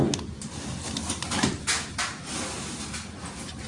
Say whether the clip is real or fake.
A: real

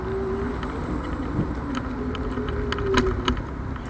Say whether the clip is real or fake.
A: real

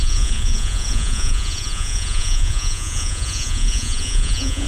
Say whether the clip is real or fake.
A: fake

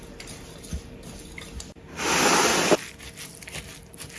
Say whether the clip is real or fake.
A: real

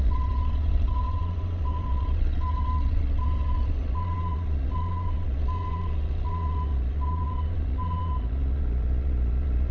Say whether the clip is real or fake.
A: fake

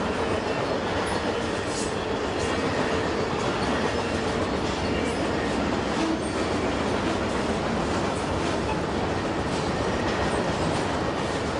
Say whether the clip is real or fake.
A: real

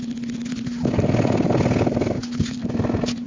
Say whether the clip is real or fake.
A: real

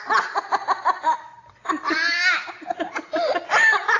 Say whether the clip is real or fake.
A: real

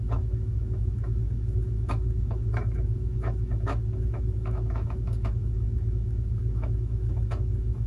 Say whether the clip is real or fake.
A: fake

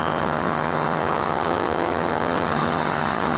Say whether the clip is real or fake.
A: fake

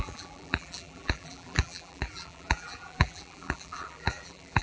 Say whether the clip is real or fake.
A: fake